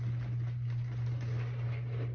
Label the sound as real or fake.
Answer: real